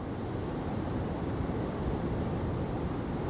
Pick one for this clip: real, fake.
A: real